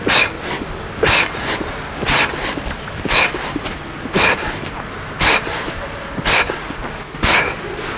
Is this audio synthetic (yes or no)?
no